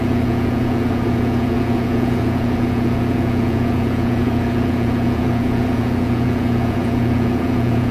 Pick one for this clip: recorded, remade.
remade